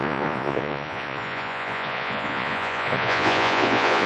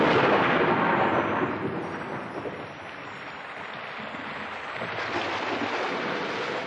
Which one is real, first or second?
second